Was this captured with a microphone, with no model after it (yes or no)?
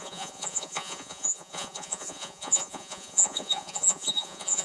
no